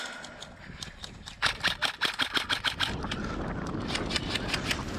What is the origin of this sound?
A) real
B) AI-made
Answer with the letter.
A